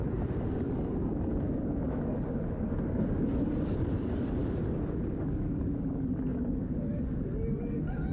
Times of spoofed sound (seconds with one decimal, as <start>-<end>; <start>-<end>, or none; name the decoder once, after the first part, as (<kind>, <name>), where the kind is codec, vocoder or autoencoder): 0.5-4.4 (codec, DAC); 5.2-8.1